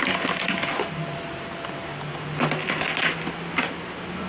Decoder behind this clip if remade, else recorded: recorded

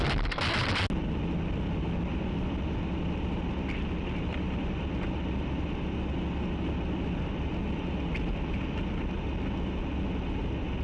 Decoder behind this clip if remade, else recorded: recorded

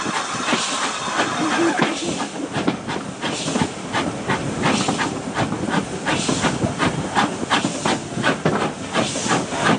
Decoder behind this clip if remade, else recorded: recorded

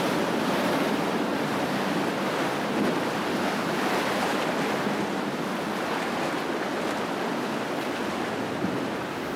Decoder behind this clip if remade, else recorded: recorded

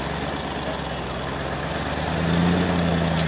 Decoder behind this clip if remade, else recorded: recorded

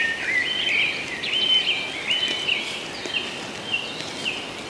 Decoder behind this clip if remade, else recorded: recorded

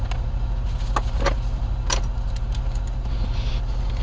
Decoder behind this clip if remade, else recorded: recorded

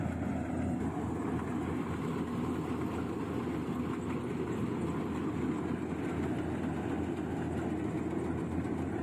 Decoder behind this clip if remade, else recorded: recorded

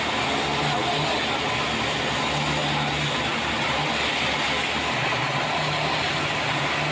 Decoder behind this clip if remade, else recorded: recorded